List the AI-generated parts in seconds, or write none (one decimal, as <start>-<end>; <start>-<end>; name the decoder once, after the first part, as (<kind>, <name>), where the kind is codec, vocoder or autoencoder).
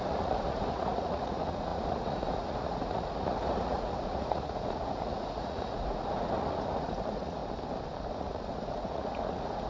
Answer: 0.0-7.4 (vocoder, Vocos); 8.1-9.7